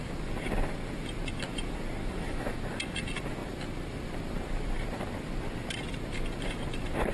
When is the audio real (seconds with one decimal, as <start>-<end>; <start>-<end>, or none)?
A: 0.0-2.0; 2.6-7.1